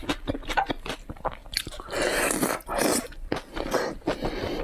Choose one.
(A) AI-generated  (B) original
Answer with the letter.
B